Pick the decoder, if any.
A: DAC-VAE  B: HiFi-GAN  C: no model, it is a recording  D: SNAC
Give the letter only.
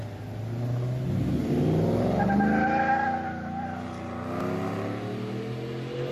C